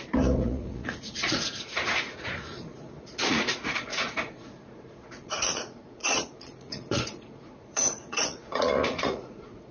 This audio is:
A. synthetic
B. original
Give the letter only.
A